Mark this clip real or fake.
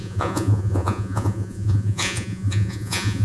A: fake